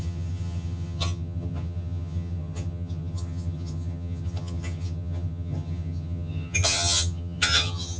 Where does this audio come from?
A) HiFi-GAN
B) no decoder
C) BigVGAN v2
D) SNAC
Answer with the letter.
A